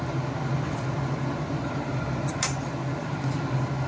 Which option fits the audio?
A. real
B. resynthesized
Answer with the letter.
A